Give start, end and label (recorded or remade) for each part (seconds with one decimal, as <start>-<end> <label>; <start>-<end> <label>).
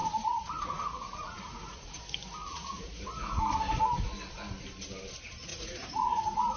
0.0-2.0 remade; 2.0-2.4 recorded; 2.4-3.4 remade; 3.4-5.5 recorded; 5.5-6.6 remade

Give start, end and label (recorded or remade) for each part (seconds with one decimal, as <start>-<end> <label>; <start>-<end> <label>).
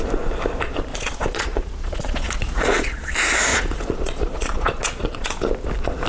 0.0-0.9 recorded; 0.9-3.1 remade; 3.1-3.5 recorded; 3.5-5.4 remade; 5.4-6.1 recorded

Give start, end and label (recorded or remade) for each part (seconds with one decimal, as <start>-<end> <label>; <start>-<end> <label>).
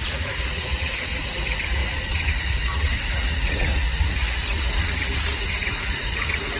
0.0-6.6 remade